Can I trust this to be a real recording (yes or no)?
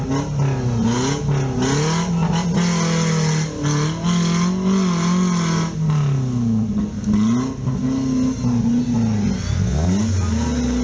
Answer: yes